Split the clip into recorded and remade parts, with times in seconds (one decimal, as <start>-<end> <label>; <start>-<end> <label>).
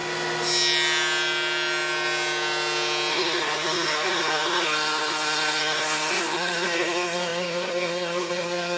0.0-3.1 recorded; 3.1-8.8 remade